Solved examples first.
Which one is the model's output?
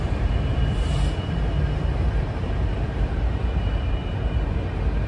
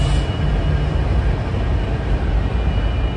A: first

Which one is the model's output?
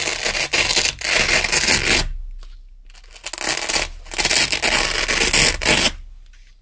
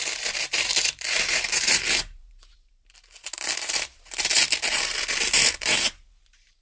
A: second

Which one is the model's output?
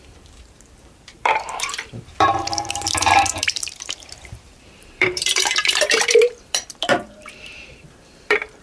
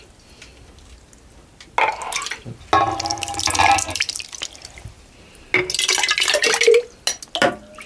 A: first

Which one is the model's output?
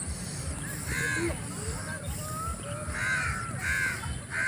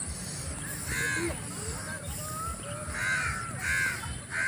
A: first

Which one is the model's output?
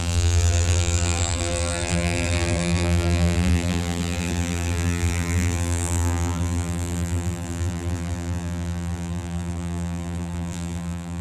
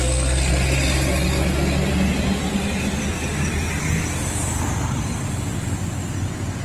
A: first